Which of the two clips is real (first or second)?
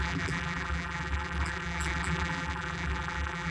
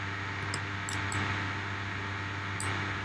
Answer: second